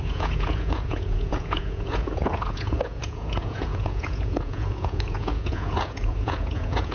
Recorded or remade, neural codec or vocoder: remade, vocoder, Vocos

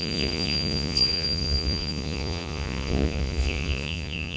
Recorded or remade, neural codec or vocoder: remade, vocoder, Vocos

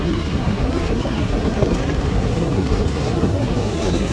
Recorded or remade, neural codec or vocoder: remade, codec, SNAC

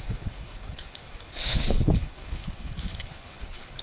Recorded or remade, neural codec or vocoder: remade, codec, HILCodec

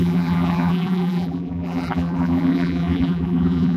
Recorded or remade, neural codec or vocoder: remade, vocoder, BigVGAN v2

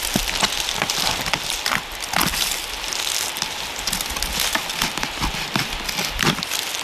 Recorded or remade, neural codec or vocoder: recorded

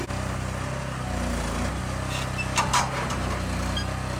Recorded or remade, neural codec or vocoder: recorded